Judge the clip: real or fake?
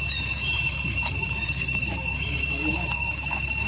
fake